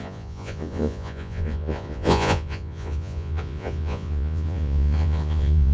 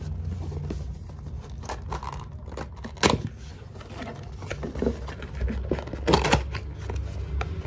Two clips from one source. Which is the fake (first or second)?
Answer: first